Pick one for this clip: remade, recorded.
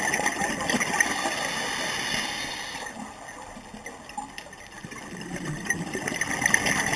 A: recorded